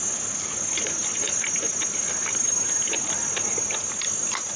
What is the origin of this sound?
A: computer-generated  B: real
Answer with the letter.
B